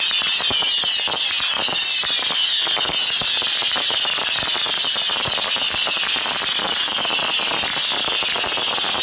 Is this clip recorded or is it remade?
recorded